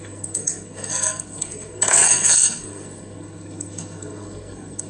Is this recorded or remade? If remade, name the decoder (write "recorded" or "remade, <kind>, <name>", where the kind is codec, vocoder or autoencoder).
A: remade, codec, SNAC